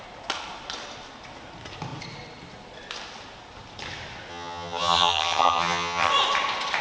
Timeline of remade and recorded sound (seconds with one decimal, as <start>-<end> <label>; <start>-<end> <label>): 0.0-4.3 recorded; 4.3-6.1 remade; 6.1-6.8 recorded